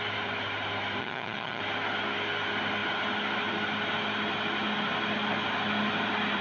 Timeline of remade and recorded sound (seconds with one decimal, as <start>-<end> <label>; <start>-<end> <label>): 0.0-1.0 recorded; 1.0-1.6 remade; 1.6-6.4 recorded